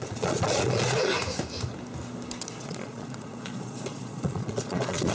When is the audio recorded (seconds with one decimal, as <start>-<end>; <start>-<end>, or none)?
1.1-2.6